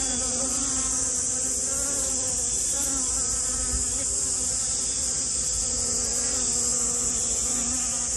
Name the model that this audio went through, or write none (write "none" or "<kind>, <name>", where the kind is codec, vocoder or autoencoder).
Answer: none